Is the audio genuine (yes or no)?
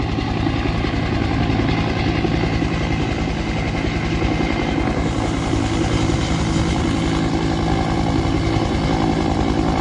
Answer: yes